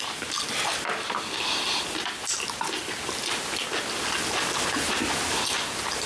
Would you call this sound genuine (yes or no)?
yes